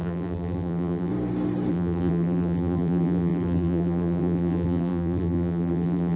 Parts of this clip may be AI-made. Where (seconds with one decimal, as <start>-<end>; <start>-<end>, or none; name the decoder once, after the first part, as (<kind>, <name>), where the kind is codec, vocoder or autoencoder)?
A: 0.0-1.1 (vocoder, BigVGAN v2); 1.7-6.2